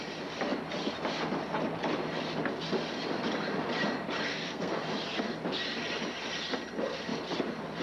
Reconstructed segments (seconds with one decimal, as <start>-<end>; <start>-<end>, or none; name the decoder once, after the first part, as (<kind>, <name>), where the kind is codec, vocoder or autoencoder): 4.3-4.8 (codec, SNAC)